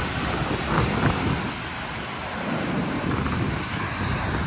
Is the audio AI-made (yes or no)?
no